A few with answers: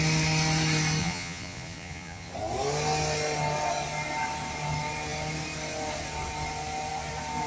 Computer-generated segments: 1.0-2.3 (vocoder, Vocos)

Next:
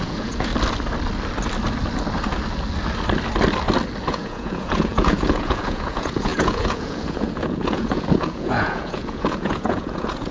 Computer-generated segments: 0.0-0.5 (vocoder, Vocos); 4.1-10.3

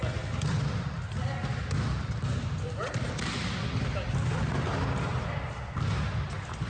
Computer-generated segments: none

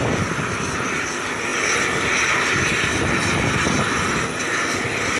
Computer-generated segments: none